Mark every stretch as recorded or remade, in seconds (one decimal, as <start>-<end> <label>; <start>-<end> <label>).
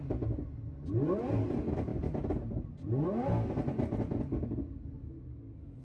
0.0-5.8 recorded